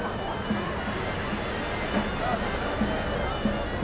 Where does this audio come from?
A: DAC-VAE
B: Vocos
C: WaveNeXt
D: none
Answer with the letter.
D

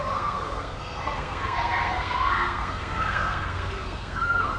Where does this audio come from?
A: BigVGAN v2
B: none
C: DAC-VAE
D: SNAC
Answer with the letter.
D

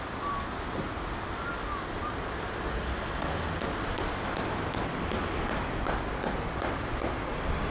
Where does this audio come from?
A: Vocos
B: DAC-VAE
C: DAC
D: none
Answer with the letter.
D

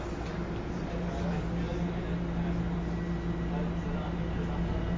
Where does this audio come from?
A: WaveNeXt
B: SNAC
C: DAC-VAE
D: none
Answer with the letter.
D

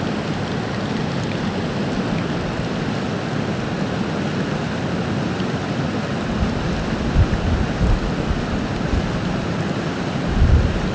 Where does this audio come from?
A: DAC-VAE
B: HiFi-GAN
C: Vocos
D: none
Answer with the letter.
D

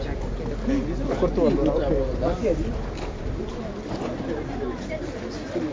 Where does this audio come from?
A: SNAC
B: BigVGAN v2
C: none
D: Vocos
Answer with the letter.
C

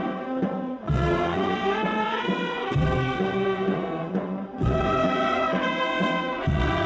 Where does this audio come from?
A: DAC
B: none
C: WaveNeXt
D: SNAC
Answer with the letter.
C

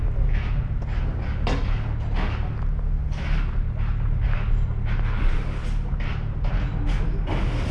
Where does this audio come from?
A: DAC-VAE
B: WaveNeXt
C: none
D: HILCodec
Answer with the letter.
C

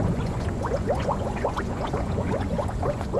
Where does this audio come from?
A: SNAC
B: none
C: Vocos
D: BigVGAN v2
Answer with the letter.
C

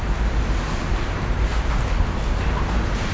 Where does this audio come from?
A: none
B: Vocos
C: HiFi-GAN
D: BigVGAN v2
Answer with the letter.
A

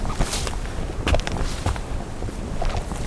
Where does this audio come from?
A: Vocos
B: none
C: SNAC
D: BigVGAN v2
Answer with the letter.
B